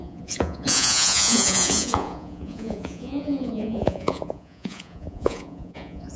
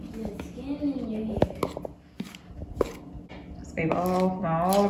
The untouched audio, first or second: second